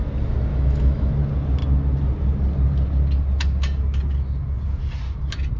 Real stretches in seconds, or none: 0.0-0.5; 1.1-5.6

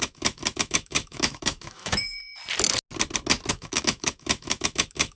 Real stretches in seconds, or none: 2.4-3.5

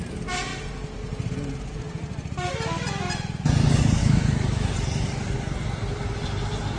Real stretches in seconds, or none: 0.0-4.0; 4.7-6.8

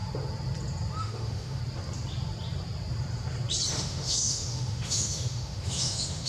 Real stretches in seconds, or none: 0.0-1.0; 1.6-3.7